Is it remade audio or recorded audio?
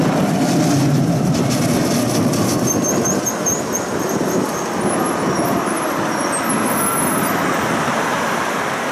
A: recorded